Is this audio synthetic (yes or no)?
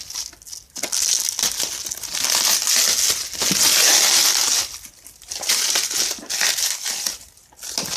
no